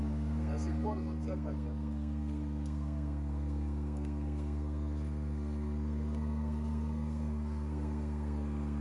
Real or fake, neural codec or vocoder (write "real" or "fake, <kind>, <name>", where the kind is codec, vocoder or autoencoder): fake, codec, SNAC